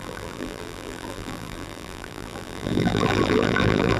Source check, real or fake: fake